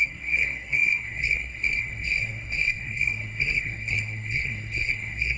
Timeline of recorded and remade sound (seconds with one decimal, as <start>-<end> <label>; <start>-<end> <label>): 0.0-5.4 remade